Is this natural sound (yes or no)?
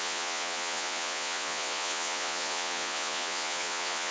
no